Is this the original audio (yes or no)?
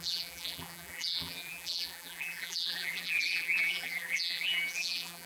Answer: no